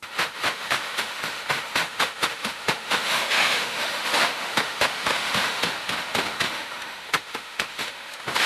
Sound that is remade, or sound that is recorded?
remade